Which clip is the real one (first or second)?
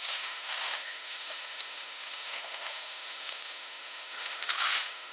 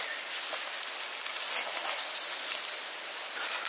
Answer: second